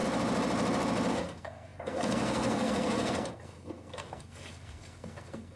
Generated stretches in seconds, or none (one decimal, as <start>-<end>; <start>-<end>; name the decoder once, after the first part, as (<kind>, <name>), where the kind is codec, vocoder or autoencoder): 1.1-5.6 (codec, SNAC)